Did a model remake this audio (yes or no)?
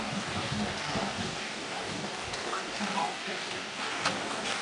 yes